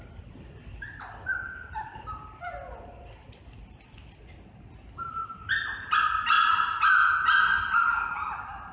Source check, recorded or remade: recorded